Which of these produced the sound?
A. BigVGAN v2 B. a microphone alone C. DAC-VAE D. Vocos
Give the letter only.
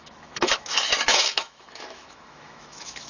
C